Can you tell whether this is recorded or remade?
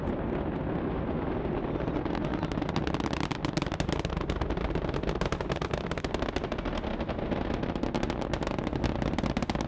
recorded